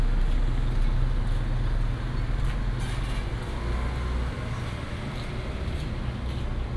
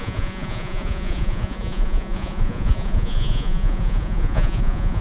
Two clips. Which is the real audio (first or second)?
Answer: first